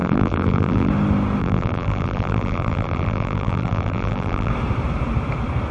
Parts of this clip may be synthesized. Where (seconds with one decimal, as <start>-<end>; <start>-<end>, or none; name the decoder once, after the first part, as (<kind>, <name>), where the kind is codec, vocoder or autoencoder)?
0.0-0.9 (vocoder, BigVGAN v2); 1.4-4.5